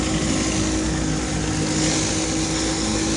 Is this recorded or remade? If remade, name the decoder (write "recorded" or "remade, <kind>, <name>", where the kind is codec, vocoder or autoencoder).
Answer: recorded